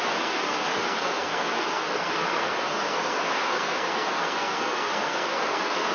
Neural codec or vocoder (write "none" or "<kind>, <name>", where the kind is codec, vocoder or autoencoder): codec, SNAC